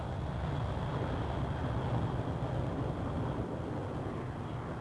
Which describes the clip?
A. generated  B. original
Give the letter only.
B